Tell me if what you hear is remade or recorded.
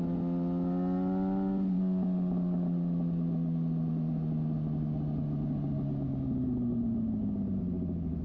recorded